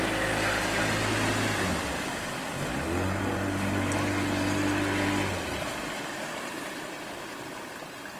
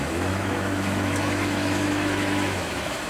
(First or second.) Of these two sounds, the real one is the first